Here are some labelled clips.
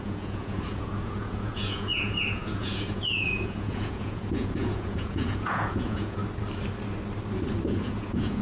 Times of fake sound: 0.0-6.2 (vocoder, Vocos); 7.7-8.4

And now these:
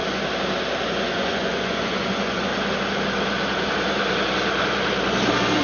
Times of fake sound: 0.8-2.5 (vocoder, Vocos)

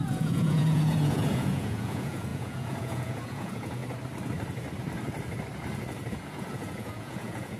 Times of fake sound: 0.0-3.8 (vocoder, Vocos); 6.1-7.6

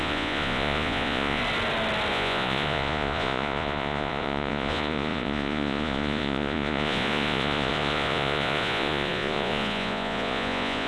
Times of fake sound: 0.0-1.4 (vocoder, Vocos); 2.1-10.9

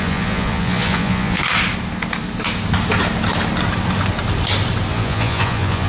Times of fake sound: 0.0-1.4 (vocoder, Vocos); 4.9-5.9

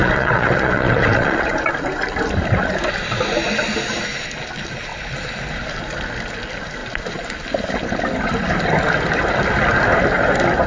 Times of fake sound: 0.0-1.7 (vocoder, Vocos)

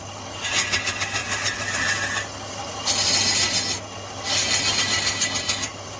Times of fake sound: none